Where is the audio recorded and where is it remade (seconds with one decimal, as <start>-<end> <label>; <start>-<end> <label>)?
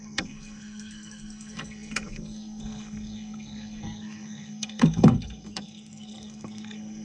0.0-7.0 remade